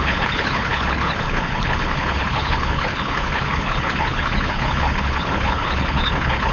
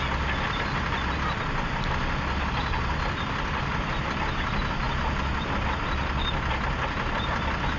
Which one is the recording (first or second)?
second